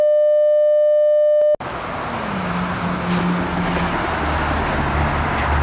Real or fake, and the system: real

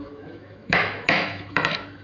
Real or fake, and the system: fake, autoencoder, DAC-VAE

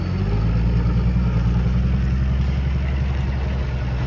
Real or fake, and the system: real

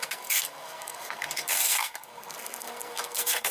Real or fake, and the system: fake, codec, SNAC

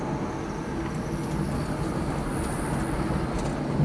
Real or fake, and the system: real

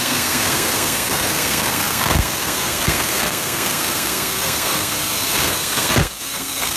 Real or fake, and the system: fake, codec, SNAC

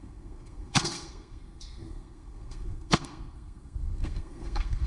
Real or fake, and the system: fake, codec, SNAC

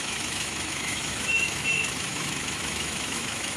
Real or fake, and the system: fake, autoencoder, DAC-VAE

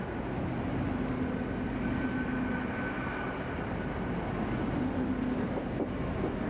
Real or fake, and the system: real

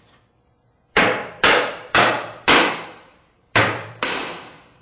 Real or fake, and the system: fake, vocoder, BigVGAN v2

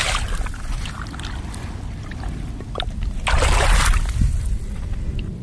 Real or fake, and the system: real